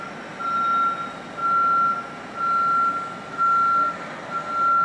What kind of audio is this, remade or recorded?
recorded